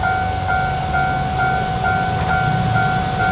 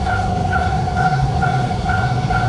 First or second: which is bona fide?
first